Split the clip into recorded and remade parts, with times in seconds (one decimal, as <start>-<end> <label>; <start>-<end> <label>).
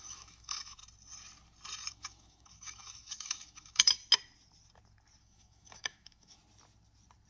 0.0-0.8 remade; 0.8-1.9 recorded; 1.9-4.0 remade; 4.0-5.2 recorded; 5.2-6.4 remade; 6.4-7.3 recorded